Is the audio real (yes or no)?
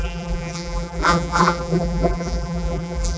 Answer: no